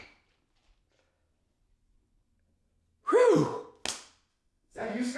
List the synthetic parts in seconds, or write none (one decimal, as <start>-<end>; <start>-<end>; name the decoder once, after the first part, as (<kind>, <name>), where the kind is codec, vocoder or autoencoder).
4.3-5.2 (autoencoder, DAC-VAE)